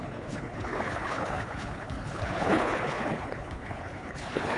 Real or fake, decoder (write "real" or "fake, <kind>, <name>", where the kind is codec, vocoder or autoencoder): fake, codec, HILCodec